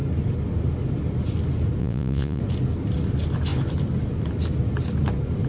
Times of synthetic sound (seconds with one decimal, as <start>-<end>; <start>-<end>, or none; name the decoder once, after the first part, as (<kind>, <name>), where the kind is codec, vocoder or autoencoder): 1.8-2.4 (vocoder, Vocos)